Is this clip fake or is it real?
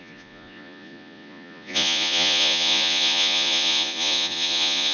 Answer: fake